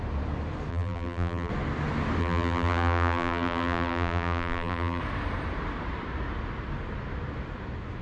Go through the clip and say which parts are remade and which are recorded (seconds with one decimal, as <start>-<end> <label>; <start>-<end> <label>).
0.0-0.7 recorded; 0.7-1.5 remade; 1.5-2.2 recorded; 2.2-5.0 remade; 5.0-8.0 recorded